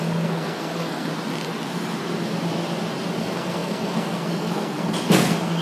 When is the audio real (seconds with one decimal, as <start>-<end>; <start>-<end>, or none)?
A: 1.1-3.2